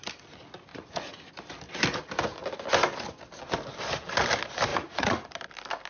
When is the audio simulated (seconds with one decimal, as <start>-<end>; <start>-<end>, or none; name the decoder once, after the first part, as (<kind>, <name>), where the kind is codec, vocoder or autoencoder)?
0.7-1.3 (vocoder, Vocos); 4.7-5.3